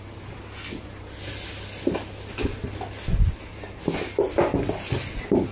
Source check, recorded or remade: recorded